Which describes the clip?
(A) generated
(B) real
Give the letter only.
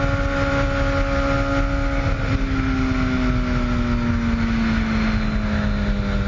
B